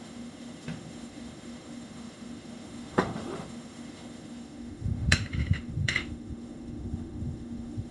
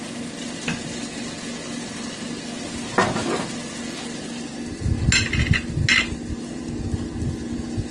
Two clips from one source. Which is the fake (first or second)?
first